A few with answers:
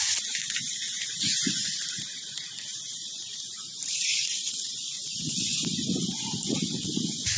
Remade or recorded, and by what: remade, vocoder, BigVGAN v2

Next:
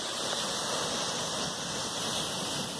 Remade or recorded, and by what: recorded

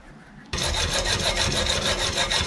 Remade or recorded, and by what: remade, vocoder, BigVGAN v2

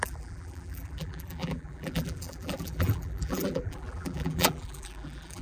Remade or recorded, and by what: remade, vocoder, BigVGAN v2